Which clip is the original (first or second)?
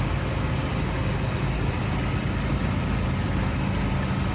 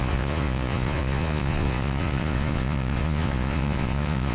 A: first